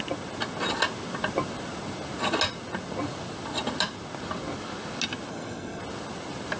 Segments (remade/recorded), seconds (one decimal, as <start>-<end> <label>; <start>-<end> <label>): 0.0-5.3 recorded; 5.3-5.8 remade; 5.8-6.6 recorded